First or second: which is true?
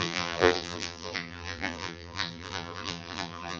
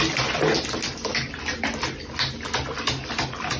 second